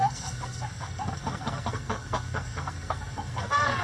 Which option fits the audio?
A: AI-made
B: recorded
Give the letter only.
A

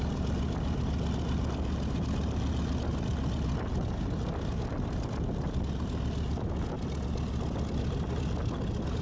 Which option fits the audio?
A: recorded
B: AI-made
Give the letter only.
A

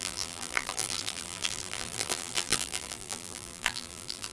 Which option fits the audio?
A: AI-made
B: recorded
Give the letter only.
A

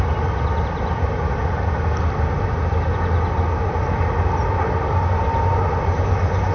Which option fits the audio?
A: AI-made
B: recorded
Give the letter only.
B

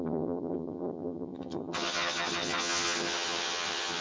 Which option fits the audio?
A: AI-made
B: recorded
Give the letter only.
A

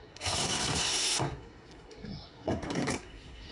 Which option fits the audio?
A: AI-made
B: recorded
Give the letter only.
A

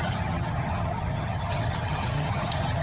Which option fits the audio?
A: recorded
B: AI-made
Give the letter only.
B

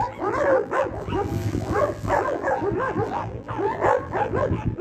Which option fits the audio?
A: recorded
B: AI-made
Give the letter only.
B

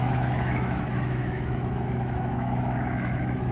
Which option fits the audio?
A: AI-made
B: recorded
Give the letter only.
A